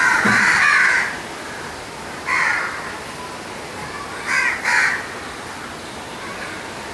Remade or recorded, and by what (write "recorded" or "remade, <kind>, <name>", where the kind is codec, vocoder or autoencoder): recorded